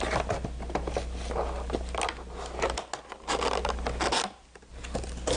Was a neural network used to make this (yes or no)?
no